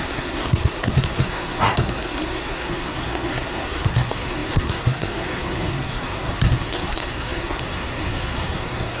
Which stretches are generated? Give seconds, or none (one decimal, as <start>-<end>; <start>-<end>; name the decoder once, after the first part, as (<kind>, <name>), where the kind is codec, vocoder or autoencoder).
0.0-9.0 (codec, SNAC)